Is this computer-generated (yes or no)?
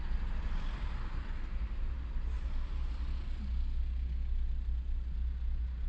no